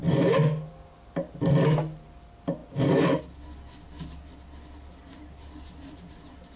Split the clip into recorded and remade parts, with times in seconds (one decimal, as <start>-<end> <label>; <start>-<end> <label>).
0.0-6.6 recorded